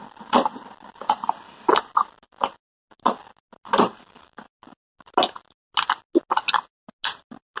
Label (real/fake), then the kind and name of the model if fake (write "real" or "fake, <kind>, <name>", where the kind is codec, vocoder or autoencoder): real